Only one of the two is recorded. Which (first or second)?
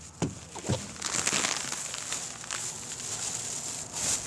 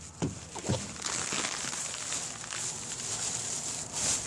first